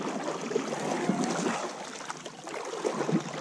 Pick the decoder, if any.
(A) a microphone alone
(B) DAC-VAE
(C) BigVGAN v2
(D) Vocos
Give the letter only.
A